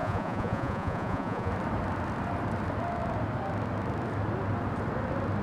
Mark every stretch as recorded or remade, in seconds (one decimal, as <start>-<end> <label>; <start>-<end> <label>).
0.0-1.5 remade; 1.5-5.4 recorded